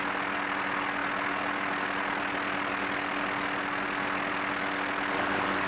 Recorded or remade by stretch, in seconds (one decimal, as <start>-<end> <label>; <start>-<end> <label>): 0.0-5.7 recorded